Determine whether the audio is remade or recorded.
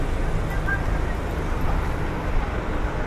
recorded